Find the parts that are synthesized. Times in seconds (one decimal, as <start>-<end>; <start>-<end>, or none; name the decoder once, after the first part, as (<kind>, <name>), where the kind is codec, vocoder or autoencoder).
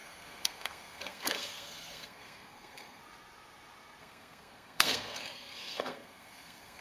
0.0-3.0 (codec, SNAC); 4.0-6.8